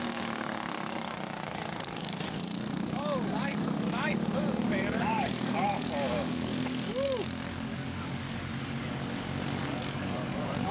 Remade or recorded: remade